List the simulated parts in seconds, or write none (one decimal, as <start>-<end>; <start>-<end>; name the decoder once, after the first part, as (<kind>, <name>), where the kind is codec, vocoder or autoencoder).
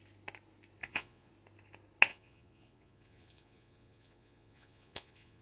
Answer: 0.8-1.3 (vocoder, Vocos); 2.1-5.4